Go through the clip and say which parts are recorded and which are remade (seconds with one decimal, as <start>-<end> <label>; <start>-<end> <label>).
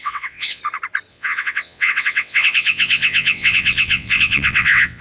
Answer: 0.0-0.6 remade; 0.6-1.1 recorded; 1.1-5.0 remade